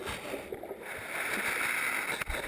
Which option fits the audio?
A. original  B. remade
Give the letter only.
A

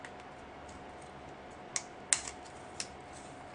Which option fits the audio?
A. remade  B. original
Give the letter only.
B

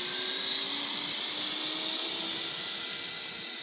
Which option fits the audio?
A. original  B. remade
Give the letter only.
A